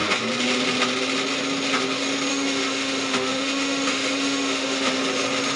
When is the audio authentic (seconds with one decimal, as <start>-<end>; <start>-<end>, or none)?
0.0-2.3; 5.0-5.6